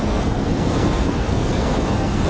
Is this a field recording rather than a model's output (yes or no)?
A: no